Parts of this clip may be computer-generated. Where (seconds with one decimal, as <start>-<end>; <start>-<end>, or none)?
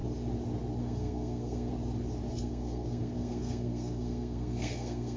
0.8-1.7; 2.3-5.2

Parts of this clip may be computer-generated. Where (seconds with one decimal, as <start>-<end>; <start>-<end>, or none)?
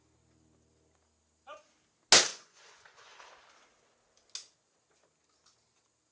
2.3-3.2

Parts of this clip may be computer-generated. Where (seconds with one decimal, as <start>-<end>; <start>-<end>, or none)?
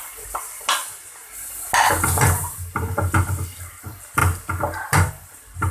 4.2-5.1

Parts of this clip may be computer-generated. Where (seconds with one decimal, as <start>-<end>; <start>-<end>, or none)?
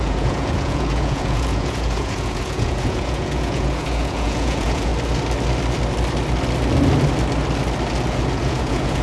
0.0-4.9; 8.3-9.0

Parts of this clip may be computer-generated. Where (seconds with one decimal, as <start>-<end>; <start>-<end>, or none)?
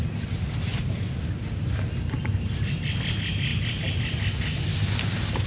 none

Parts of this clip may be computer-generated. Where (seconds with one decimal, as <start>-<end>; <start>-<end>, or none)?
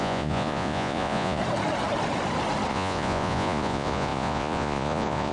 0.0-1.4; 2.7-5.3